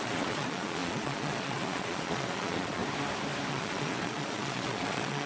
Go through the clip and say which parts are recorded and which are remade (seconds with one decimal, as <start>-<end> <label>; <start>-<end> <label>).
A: 0.0-2.8 remade; 2.8-3.5 recorded; 3.5-5.3 remade

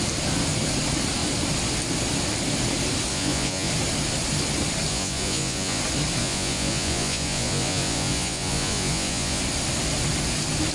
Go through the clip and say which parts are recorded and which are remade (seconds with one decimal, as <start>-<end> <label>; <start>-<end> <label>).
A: 0.0-3.1 recorded; 3.1-3.7 remade; 3.7-4.9 recorded; 4.9-5.8 remade; 5.8-6.2 recorded; 6.2-9.4 remade; 9.4-10.7 recorded

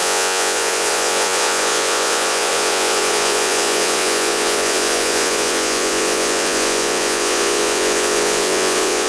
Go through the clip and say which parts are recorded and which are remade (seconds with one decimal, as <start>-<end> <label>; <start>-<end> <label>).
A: 0.0-9.1 remade

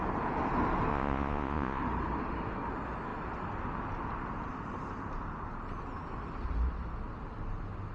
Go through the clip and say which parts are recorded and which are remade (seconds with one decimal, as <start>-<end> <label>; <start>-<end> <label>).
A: 0.0-0.9 recorded; 0.9-1.8 remade; 1.8-7.9 recorded